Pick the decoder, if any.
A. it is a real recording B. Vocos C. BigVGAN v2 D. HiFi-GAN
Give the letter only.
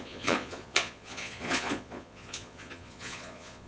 B